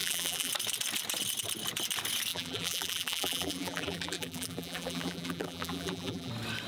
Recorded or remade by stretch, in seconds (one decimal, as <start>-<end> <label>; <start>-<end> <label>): 0.0-0.5 remade; 0.5-2.3 recorded; 2.3-6.3 remade; 6.3-6.7 recorded

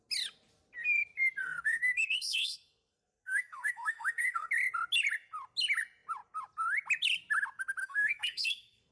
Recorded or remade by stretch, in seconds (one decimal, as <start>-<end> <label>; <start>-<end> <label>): 0.0-1.4 recorded; 1.4-4.5 remade; 4.5-7.8 recorded; 7.8-8.9 remade